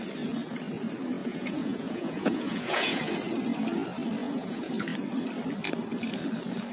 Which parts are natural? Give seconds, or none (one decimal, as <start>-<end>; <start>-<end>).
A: 0.0-1.2; 3.0-4.2; 4.7-6.7